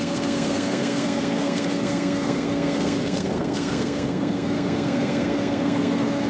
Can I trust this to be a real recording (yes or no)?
no